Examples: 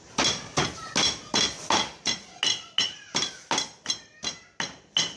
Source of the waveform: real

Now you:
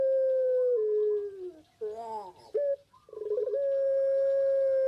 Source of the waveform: real